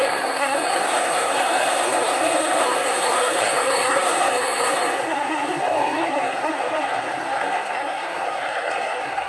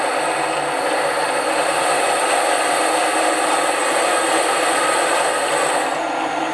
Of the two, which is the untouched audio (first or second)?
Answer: second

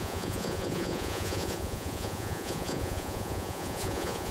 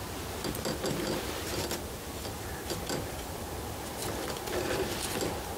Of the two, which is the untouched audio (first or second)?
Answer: second